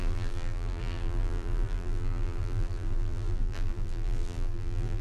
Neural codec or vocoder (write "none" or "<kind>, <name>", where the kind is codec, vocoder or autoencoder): vocoder, BigVGAN v2